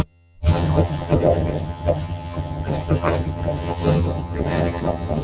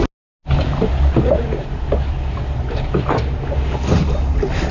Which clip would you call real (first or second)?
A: second